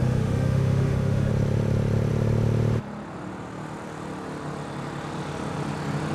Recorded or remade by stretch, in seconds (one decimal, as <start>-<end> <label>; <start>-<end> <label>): 0.0-1.3 remade; 1.3-6.1 recorded